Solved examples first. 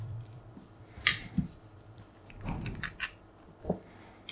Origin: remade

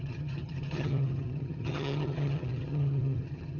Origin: remade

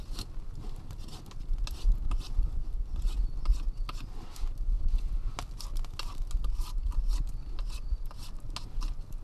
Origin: recorded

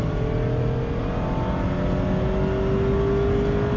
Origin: recorded